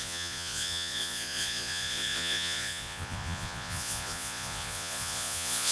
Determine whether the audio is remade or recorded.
remade